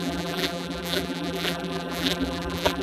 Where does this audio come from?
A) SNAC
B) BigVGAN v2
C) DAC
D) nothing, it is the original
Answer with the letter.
B